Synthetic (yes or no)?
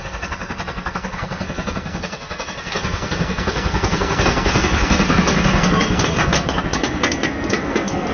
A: yes